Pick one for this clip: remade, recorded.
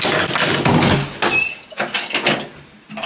recorded